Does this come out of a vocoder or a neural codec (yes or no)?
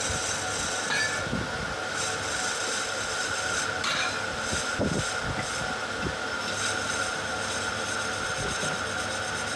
no